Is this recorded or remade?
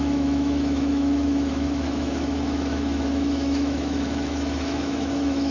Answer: remade